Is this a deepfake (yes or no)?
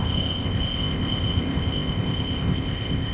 yes